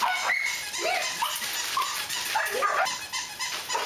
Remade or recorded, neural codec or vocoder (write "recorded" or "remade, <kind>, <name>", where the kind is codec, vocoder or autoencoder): recorded